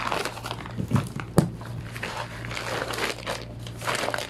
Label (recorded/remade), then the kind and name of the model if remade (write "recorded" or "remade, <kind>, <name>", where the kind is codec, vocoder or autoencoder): recorded